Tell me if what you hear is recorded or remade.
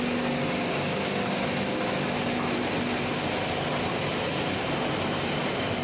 recorded